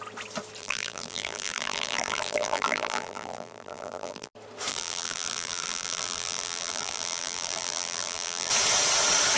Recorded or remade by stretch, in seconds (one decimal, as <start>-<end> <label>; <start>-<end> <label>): 0.0-0.6 recorded; 0.6-4.3 remade; 4.3-4.7 recorded; 4.7-8.5 remade; 8.5-9.4 recorded